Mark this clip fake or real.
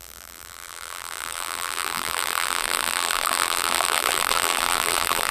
fake